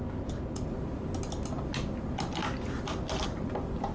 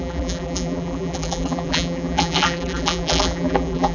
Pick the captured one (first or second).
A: first